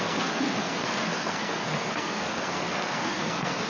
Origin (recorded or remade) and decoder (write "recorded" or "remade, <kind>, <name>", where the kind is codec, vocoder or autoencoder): remade, codec, SNAC